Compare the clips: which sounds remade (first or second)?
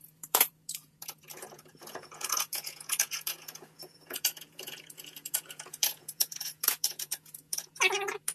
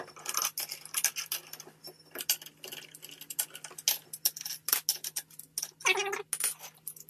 first